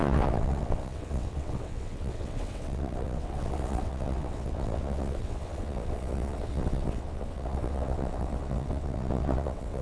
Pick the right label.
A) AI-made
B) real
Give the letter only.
A